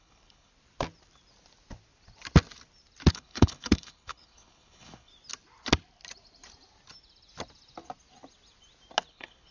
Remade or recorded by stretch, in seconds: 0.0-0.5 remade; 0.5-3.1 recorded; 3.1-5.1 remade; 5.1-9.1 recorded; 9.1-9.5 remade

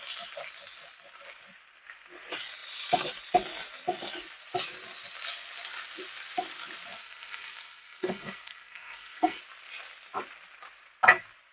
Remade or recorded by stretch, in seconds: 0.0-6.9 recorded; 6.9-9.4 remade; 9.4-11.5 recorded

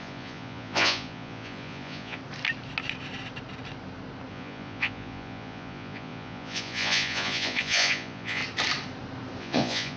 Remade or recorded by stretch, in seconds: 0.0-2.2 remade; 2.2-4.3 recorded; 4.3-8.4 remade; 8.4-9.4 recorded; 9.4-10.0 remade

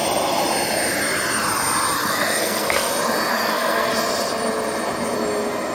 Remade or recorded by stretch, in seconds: 0.0-2.0 recorded; 2.0-2.9 remade; 2.9-3.3 recorded; 3.3-3.9 remade; 3.9-5.7 recorded

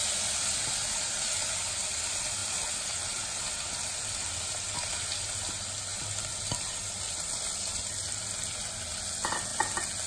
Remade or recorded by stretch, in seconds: 0.0-10.1 recorded